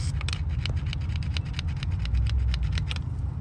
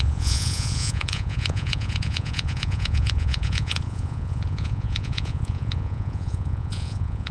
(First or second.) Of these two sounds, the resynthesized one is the second